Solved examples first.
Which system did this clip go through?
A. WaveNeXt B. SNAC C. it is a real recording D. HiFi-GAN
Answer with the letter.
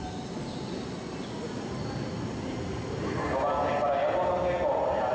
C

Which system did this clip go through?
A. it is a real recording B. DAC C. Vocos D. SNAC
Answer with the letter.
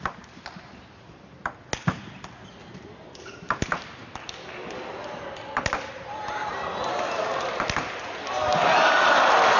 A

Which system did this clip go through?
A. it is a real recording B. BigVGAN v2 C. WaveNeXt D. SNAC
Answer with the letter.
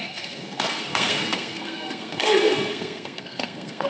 D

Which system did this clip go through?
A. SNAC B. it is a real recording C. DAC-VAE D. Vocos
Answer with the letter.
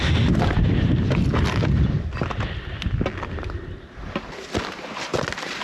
B